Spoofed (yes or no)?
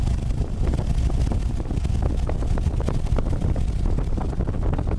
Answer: yes